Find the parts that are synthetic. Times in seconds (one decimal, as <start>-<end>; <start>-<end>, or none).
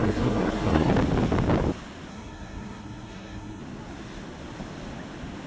0.0-0.9; 2.1-3.6